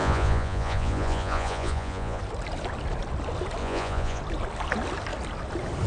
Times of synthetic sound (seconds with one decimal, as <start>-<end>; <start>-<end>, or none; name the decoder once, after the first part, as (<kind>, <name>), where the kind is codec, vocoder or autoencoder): 0.0-2.2 (vocoder, Vocos); 3.6-4.2